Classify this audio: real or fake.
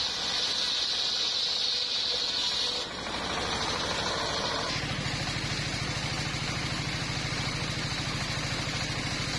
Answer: real